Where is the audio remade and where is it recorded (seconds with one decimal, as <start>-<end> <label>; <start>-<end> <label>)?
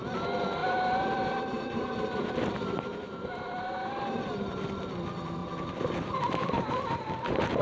0.0-0.6 recorded; 0.6-4.6 remade; 4.6-5.4 recorded; 5.4-7.6 remade